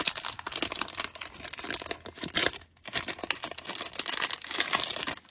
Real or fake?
real